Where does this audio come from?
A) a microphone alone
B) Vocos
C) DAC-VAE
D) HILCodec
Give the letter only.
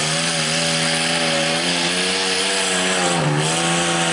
A